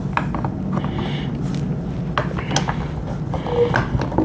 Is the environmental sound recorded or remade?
recorded